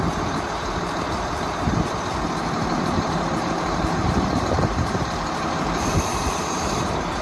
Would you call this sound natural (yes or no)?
no